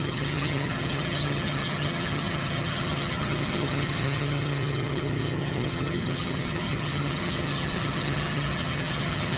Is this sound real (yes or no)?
no